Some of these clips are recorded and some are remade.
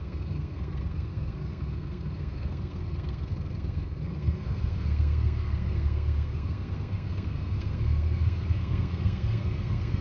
remade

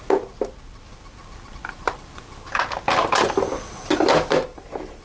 recorded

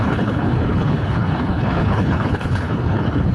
remade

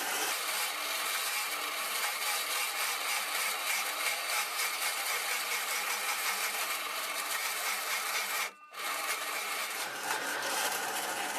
remade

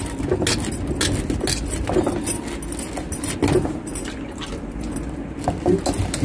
recorded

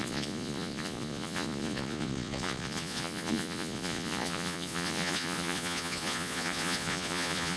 remade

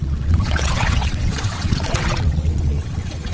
remade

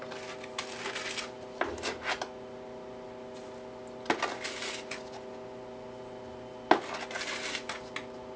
recorded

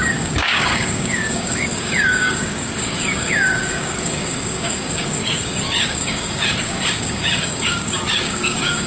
remade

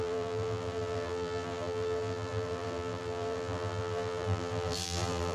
remade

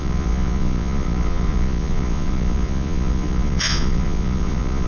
remade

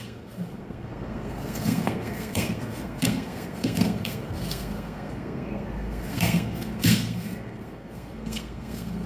remade